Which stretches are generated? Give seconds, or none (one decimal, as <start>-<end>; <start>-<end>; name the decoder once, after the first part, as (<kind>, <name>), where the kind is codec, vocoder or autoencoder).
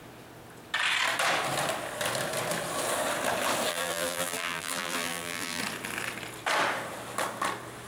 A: 3.7-5.6 (vocoder, BigVGAN v2)